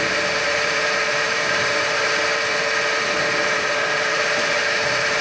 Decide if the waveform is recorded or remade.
remade